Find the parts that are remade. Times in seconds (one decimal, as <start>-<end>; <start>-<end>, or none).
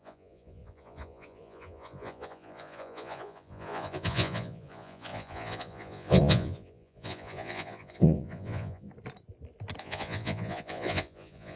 0.0-8.9; 9.8-11.6